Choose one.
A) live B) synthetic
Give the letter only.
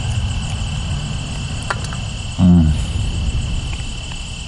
A